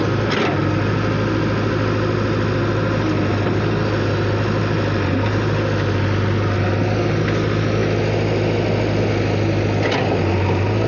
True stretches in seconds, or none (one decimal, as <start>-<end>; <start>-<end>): 0.0-10.9